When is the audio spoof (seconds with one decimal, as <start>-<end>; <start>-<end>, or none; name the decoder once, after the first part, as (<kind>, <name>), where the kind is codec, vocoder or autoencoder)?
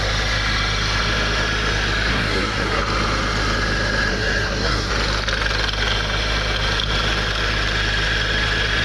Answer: 2.1-2.8 (codec, SNAC); 4.1-4.9